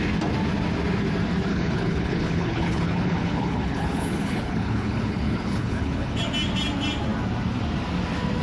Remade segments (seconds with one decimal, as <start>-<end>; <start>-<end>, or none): 1.5-6.2